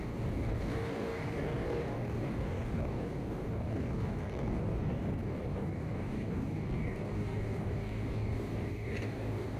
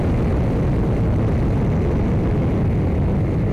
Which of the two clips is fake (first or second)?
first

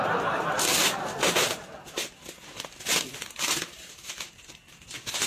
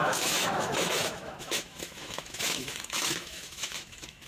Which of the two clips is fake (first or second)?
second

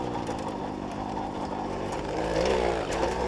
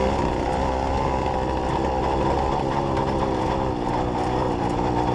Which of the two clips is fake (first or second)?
first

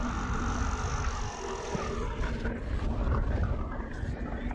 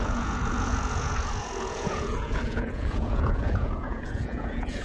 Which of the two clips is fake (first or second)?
second